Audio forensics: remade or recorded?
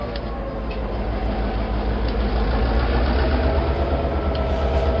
recorded